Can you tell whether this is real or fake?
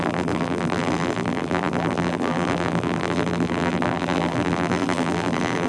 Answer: fake